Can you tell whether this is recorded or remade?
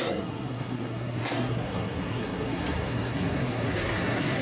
remade